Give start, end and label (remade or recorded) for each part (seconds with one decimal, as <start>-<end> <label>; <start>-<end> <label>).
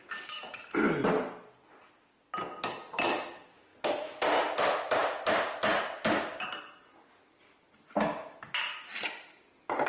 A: 0.0-9.9 recorded